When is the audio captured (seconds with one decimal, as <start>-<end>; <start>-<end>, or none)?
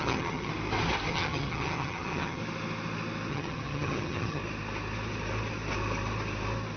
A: 0.5-1.1; 2.4-3.3; 4.4-6.8